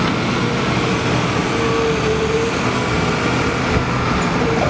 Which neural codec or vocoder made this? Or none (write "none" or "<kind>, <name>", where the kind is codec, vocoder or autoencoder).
none